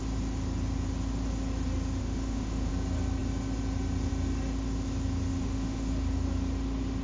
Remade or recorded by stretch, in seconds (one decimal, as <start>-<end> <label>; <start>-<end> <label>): 0.0-2.0 recorded; 2.0-2.7 remade; 2.7-5.3 recorded; 5.3-5.9 remade; 5.9-7.0 recorded